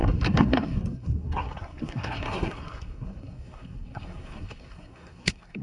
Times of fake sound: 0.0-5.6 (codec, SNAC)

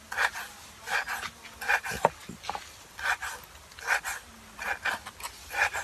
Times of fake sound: none

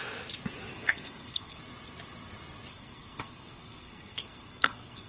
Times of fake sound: 0.7-1.6 (codec, SNAC); 2.7-5.1